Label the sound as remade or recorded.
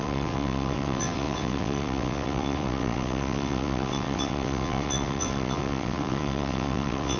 remade